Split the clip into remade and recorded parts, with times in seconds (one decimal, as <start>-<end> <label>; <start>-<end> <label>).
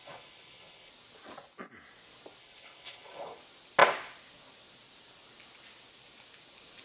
0.0-0.9 remade; 0.9-2.4 recorded; 2.4-3.4 remade; 3.4-6.8 recorded